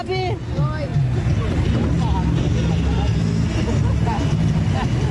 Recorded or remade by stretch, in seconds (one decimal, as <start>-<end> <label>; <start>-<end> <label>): 0.0-5.1 recorded